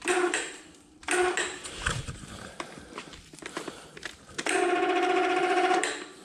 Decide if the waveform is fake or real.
fake